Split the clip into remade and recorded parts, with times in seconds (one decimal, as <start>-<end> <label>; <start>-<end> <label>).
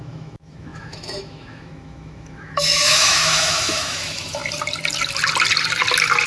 0.0-4.4 remade; 4.4-6.3 recorded